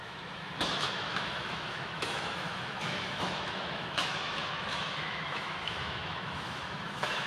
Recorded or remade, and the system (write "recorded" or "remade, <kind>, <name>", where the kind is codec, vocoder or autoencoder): remade, autoencoder, DAC-VAE